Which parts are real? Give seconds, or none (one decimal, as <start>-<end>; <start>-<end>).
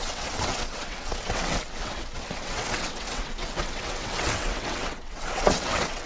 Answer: none